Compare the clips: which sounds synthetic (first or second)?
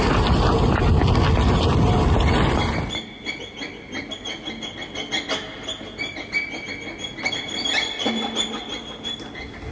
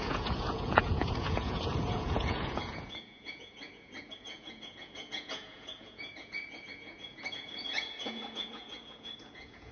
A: second